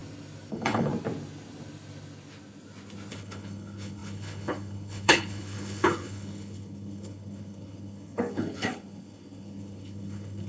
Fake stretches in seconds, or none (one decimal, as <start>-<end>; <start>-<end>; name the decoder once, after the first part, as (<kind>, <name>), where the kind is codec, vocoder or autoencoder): 0.5-0.9 (codec, HILCodec); 3.1-10.5